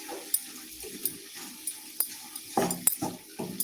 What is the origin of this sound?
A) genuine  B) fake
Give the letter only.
A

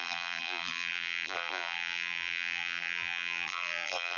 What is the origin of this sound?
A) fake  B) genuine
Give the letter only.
A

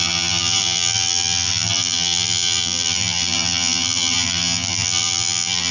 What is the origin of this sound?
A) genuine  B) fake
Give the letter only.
B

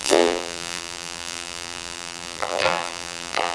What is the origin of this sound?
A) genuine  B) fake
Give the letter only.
B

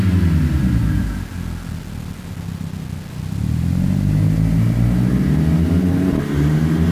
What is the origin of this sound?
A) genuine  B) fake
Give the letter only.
A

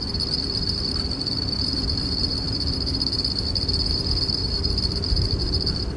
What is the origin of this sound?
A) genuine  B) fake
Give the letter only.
B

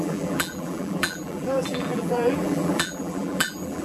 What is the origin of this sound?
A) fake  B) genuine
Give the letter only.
A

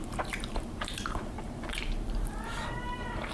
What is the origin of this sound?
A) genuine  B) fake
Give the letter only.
B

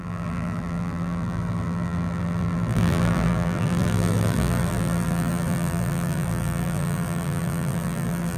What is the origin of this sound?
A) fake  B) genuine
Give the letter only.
A